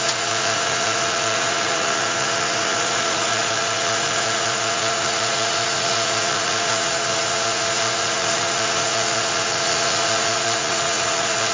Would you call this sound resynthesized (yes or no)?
yes